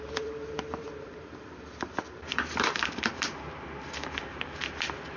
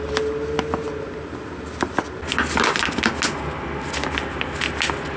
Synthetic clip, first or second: first